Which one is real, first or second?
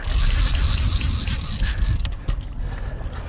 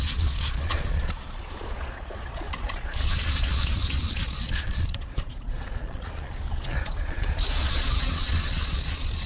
first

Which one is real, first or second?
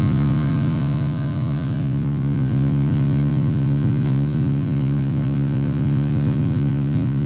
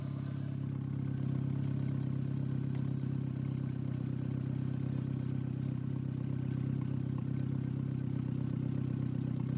second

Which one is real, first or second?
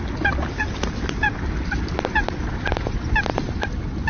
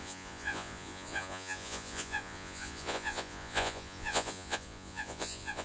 first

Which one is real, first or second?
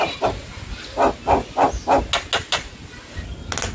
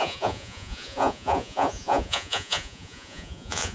first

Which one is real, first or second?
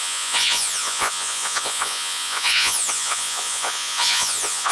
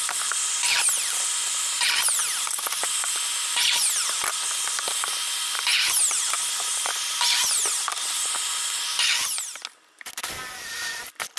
second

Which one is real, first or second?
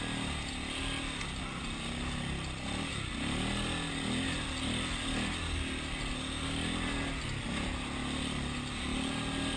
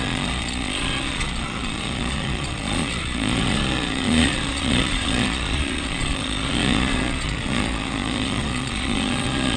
first